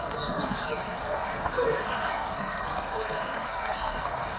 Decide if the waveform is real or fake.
fake